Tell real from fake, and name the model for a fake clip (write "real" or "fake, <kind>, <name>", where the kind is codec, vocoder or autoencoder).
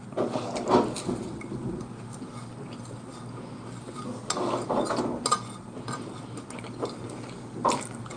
real